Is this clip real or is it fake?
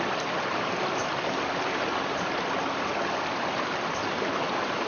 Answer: real